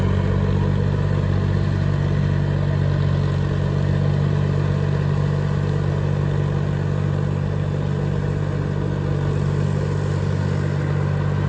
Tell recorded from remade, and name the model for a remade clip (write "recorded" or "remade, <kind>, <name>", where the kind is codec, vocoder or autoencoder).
recorded